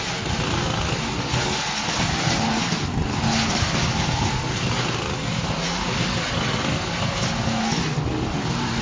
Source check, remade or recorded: recorded